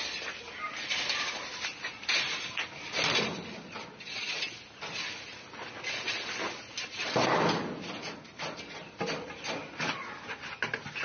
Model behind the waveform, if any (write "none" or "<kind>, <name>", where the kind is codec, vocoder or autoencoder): none